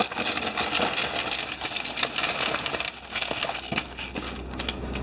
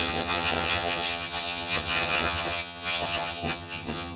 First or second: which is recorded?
first